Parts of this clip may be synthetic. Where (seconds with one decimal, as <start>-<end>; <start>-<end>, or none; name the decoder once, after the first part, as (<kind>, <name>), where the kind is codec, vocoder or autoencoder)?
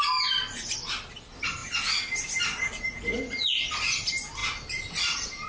none